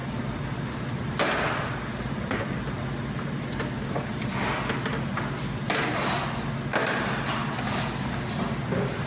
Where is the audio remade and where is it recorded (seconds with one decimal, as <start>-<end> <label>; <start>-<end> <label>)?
0.0-9.1 recorded